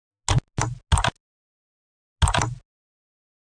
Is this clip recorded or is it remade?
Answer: recorded